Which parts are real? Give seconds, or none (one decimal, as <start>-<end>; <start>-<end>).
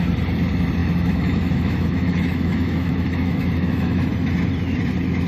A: 0.0-0.8; 4.0-5.3